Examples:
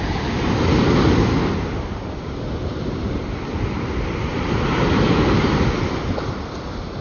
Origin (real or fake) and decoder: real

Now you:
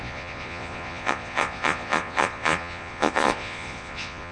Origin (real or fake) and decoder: fake, vocoder, Vocos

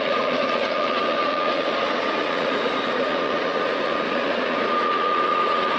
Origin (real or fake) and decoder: fake, vocoder, Vocos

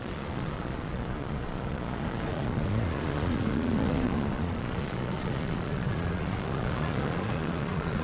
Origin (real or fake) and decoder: fake, vocoder, Vocos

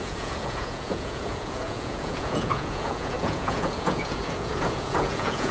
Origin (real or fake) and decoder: fake, vocoder, Vocos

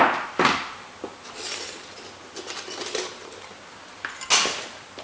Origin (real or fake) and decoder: real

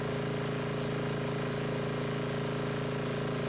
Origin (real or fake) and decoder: real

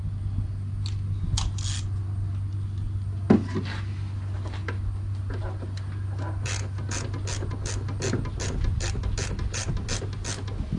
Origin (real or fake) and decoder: real